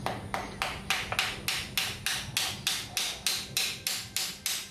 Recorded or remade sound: recorded